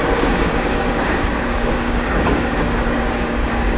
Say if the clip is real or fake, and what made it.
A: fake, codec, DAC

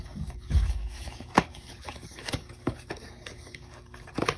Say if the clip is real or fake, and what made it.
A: fake, codec, DAC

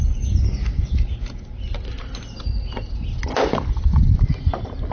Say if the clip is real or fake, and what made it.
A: real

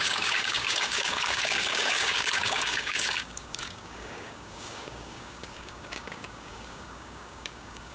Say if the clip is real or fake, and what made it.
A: fake, codec, DAC